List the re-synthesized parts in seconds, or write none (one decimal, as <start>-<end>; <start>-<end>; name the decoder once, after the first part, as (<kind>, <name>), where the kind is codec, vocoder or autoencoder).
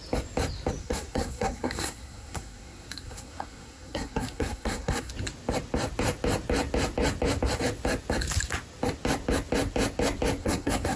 0.8-5.1 (codec, SNAC); 10.4-11.0